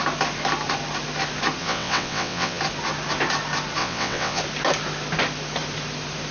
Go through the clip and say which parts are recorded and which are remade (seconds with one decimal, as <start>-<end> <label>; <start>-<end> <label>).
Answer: 0.0-1.6 recorded; 1.6-2.6 remade; 2.6-3.8 recorded; 3.8-4.4 remade; 4.4-6.3 recorded